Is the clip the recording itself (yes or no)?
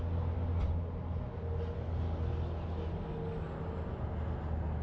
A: yes